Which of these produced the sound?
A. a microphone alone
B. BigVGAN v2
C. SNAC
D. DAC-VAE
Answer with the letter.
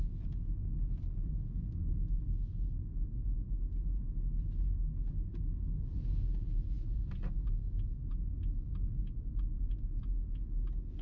A